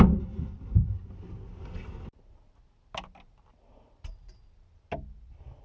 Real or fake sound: real